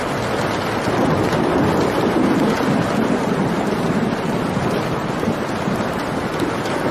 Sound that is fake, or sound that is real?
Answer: real